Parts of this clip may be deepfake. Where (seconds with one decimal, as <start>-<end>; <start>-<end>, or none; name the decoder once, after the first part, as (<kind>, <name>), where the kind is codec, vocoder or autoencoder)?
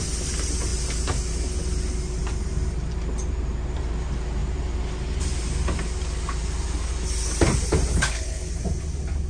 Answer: 7.9-8.5 (codec, HILCodec)